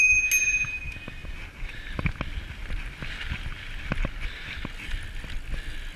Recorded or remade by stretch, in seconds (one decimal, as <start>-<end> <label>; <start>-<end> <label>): 0.0-6.0 recorded